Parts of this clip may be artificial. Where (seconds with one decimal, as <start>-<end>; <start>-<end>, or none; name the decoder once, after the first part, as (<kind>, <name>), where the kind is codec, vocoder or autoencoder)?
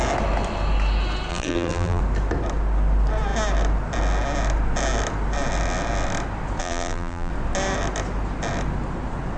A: 1.3-2.0 (vocoder, BigVGAN v2); 6.6-7.3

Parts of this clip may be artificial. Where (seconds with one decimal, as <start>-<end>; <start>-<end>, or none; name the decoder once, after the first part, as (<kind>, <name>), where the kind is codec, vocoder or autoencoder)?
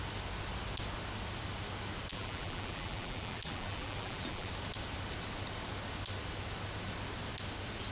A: 2.1-4.5 (vocoder, BigVGAN v2)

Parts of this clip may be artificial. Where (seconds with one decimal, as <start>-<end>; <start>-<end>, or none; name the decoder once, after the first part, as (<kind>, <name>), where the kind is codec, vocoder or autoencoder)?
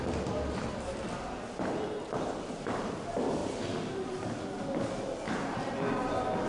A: 0.7-3.0 (vocoder, BigVGAN v2); 3.4-4.4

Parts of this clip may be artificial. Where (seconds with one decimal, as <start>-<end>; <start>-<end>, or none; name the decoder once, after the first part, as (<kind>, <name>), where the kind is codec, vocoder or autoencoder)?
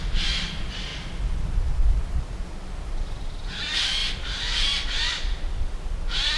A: 0.0-0.9 (vocoder, BigVGAN v2); 3.6-6.4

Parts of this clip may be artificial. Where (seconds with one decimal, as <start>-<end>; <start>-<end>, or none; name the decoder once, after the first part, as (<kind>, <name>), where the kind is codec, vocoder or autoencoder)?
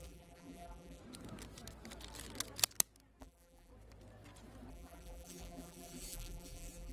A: 0.0-1.0 (vocoder, BigVGAN v2); 3.2-3.7; 4.7-6.9